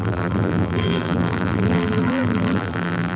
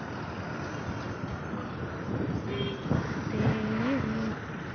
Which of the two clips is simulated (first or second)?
first